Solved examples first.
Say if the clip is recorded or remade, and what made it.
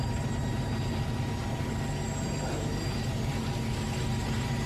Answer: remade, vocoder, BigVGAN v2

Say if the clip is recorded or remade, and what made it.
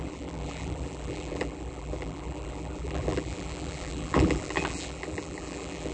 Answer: remade, vocoder, BigVGAN v2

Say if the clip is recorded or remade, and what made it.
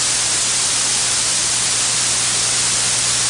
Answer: recorded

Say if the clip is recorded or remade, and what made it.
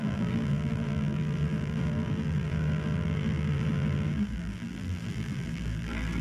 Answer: remade, vocoder, BigVGAN v2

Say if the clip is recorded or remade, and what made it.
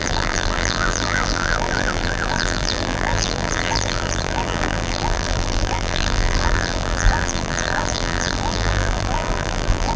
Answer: remade, vocoder, BigVGAN v2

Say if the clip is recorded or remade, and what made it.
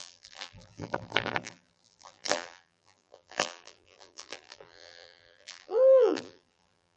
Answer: remade, vocoder, BigVGAN v2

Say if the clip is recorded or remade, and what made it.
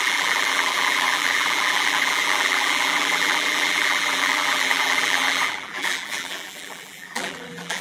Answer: remade, vocoder, BigVGAN v2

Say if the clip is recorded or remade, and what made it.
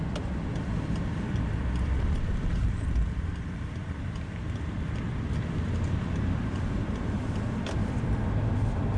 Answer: remade, vocoder, BigVGAN v2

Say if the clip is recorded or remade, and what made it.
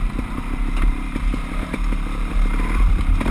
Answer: remade, vocoder, BigVGAN v2